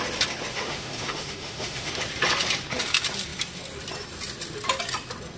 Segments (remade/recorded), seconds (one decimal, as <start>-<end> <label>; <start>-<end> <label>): 0.0-0.5 recorded; 0.5-1.9 remade; 1.9-5.4 recorded